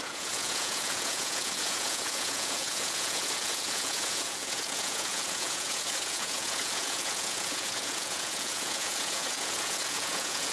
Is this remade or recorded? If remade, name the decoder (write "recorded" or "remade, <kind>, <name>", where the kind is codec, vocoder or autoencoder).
remade, vocoder, Vocos